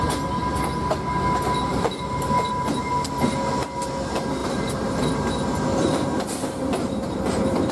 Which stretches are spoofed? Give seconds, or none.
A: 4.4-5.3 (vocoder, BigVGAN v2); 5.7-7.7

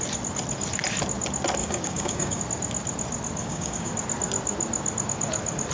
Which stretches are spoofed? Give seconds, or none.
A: 1.6-2.4 (codec, DAC); 3.4-3.9

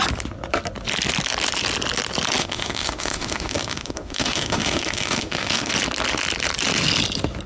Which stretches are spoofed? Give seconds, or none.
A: 2.4-5.7 (autoencoder, DAC-VAE)

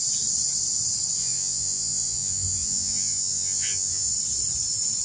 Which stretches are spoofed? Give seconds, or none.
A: 1.2-4.1 (vocoder, Vocos)

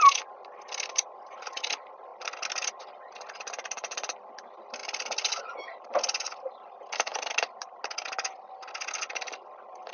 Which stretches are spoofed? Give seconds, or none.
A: none